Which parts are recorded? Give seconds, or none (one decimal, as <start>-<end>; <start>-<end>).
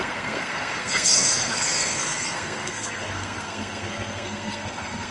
none